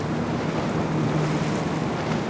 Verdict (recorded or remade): recorded